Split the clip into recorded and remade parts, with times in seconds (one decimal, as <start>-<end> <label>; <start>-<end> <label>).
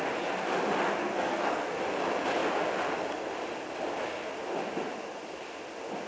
0.0-1.0 recorded; 1.0-1.8 remade; 1.8-6.1 recorded